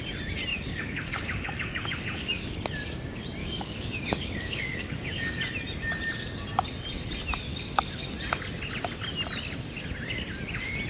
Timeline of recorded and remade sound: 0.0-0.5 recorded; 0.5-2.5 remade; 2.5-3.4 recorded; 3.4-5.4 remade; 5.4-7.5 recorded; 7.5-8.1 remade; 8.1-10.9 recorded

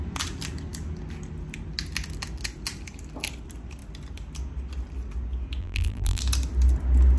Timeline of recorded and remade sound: 0.0-5.6 recorded; 5.6-6.2 remade; 6.2-7.2 recorded

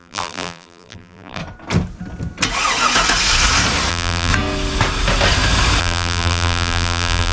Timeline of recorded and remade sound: 0.0-1.4 remade; 1.4-3.9 recorded; 3.9-4.3 remade; 4.3-5.8 recorded; 5.8-7.3 remade

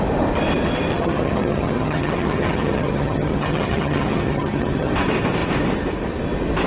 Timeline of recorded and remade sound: 0.0-0.9 recorded; 0.9-4.9 remade; 4.9-6.7 recorded

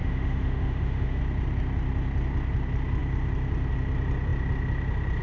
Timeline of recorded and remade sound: 0.0-1.2 remade; 1.2-5.2 recorded

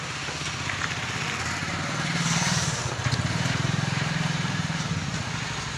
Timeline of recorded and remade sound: 0.0-1.6 recorded; 1.6-5.1 remade; 5.1-5.8 recorded

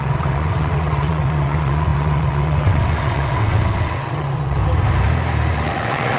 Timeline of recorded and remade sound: 0.0-4.6 remade; 4.6-5.5 recorded; 5.5-6.2 remade

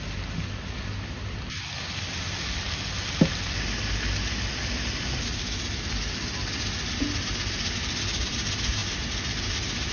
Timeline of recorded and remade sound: 0.0-9.9 recorded